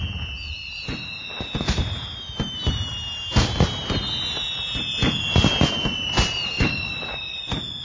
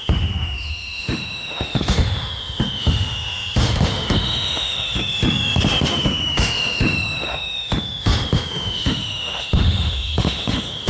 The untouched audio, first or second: first